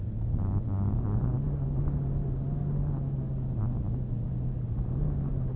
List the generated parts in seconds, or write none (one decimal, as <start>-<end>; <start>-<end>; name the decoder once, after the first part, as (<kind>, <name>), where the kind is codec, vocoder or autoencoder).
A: none